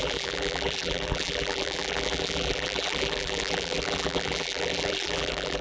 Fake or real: fake